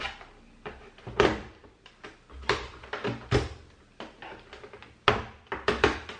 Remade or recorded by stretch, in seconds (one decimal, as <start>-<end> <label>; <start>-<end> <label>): 0.0-1.6 remade; 1.6-4.3 recorded; 4.3-4.8 remade; 4.8-5.4 recorded; 5.4-6.2 remade

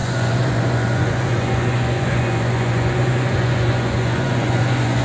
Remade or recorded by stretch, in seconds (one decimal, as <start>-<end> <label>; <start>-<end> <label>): 0.0-5.0 remade

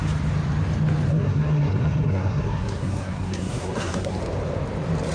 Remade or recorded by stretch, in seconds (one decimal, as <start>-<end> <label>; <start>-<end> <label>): 0.0-1.1 recorded; 1.1-4.2 remade; 4.2-5.1 recorded

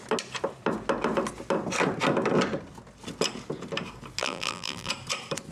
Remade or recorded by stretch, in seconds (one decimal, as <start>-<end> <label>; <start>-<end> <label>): 0.0-4.2 recorded; 4.2-4.9 remade; 4.9-5.5 recorded

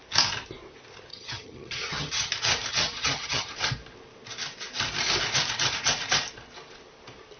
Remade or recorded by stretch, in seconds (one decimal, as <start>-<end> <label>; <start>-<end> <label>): 0.0-1.1 recorded; 1.1-2.3 remade; 2.3-2.7 recorded; 2.7-3.5 remade; 3.5-7.4 recorded

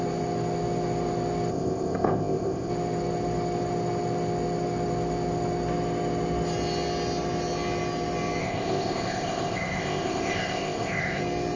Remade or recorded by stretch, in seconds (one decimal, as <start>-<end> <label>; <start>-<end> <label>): 0.0-1.5 recorded; 1.5-2.7 remade; 2.7-8.4 recorded; 8.4-11.2 remade; 11.2-11.6 recorded